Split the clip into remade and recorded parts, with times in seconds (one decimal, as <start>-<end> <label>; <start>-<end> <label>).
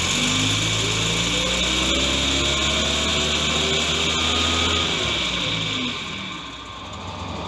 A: 0.0-7.5 recorded